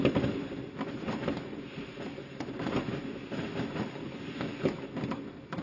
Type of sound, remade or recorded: recorded